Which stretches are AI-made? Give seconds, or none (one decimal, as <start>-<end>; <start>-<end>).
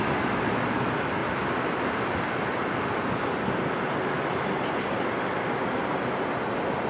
1.2-2.1